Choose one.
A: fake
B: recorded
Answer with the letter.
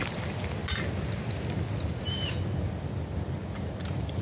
B